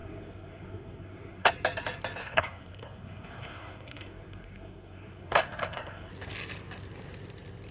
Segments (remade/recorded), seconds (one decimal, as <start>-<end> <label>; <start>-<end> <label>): 0.0-1.5 remade; 1.5-2.2 recorded; 2.2-6.1 remade; 6.1-7.7 recorded